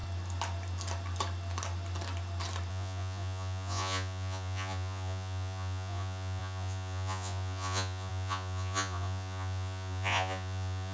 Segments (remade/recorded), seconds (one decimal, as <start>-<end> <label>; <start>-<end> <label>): 0.0-2.7 recorded; 2.7-10.9 remade